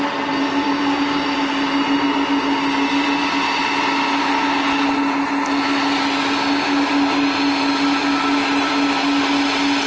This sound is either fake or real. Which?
real